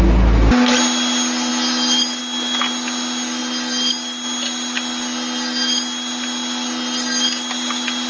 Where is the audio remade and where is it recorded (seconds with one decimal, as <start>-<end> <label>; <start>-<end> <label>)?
0.0-8.1 recorded